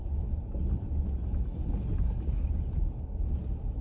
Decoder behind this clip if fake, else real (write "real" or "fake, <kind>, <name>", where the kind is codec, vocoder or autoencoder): real